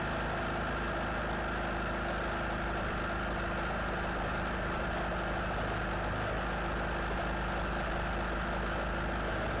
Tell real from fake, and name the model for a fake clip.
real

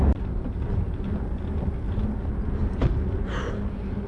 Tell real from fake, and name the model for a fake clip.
real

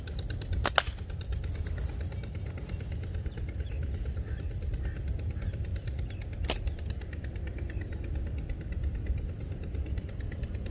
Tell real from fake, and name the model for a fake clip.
real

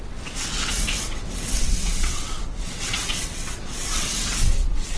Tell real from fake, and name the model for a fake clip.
fake, vocoder, WaveNeXt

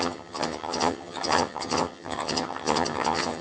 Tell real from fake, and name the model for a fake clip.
fake, vocoder, HiFi-GAN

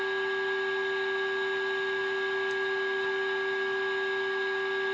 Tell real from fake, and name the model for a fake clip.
real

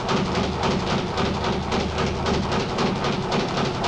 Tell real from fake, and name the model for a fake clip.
real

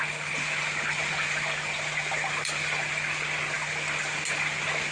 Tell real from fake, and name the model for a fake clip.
real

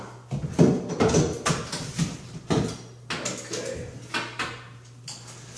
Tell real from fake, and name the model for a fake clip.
real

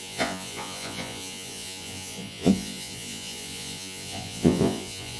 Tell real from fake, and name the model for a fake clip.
fake, vocoder, Vocos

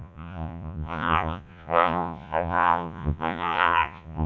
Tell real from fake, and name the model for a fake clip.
fake, vocoder, Vocos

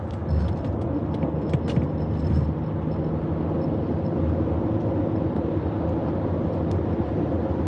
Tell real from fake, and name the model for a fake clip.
real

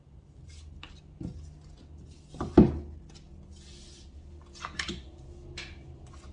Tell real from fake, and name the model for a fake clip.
real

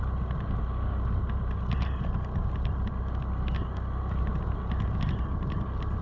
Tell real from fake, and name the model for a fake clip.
real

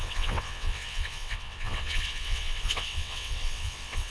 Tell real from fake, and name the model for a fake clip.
fake, vocoder, WaveNeXt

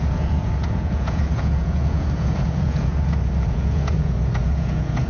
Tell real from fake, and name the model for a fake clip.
fake, vocoder, Vocos